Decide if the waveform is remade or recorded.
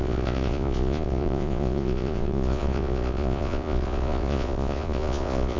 remade